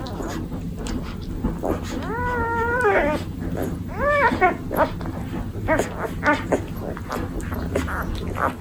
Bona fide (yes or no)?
yes